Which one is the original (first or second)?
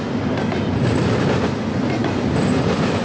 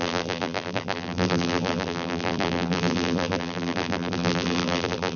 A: first